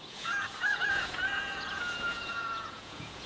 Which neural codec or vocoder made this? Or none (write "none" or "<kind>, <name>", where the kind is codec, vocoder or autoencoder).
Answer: vocoder, Vocos